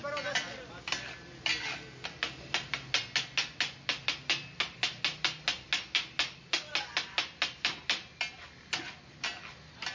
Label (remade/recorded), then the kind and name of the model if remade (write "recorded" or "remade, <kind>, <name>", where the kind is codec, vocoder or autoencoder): recorded